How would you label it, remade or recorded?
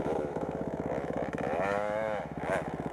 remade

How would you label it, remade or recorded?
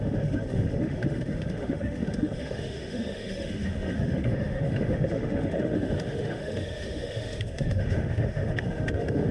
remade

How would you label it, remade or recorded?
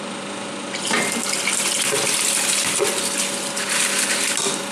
recorded